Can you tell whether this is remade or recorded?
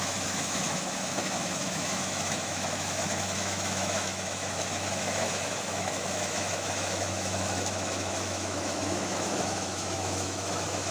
remade